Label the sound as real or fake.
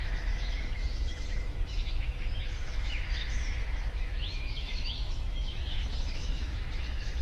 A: fake